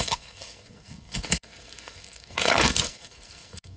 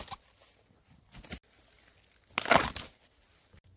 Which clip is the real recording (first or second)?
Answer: second